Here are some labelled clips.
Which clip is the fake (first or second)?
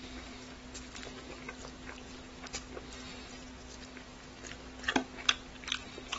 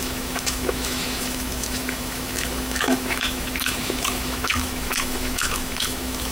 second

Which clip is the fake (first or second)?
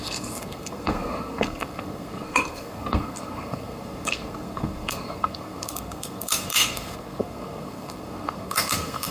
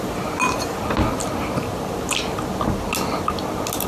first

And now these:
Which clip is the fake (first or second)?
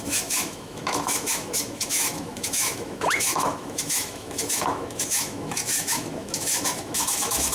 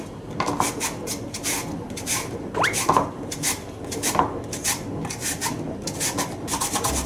first